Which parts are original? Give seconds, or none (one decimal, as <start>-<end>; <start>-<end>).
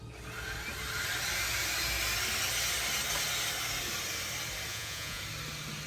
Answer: 0.0-4.7; 5.2-5.9